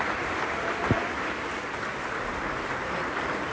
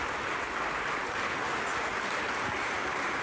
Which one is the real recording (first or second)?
second